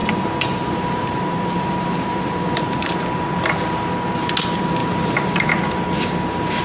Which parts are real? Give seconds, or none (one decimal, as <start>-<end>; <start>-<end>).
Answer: 3.6-4.8; 5.5-6.6